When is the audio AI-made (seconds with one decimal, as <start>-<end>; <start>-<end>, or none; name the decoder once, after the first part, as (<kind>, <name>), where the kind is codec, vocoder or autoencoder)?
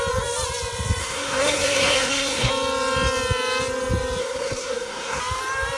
1.0-2.5 (codec, SNAC); 4.2-5.2